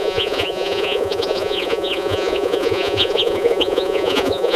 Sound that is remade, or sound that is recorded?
remade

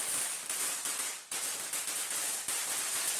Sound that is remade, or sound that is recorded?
remade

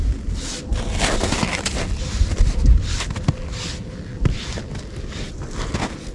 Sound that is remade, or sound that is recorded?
recorded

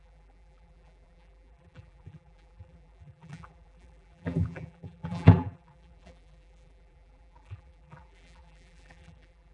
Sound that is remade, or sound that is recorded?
remade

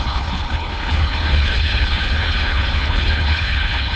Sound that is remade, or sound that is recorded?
remade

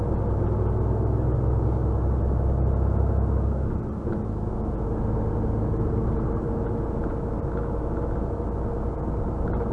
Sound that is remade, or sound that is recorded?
recorded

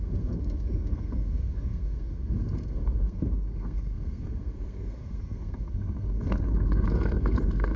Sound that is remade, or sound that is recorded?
remade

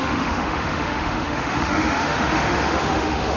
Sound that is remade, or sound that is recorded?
remade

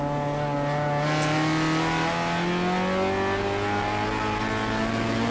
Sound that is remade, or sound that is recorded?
recorded